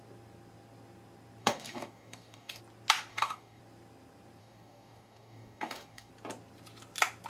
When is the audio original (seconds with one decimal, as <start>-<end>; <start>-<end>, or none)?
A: 0.0-1.4; 2.6-3.1; 3.6-4.4; 6.1-7.3